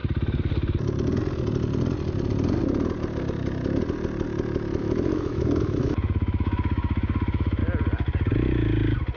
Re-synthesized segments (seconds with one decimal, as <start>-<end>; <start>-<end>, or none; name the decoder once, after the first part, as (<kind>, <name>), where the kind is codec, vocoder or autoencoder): 4.8-7.6 (autoencoder, DAC-VAE)